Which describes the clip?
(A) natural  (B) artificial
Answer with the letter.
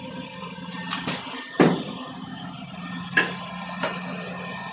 A